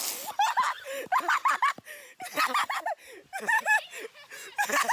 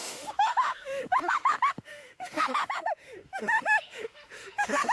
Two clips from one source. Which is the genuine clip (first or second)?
first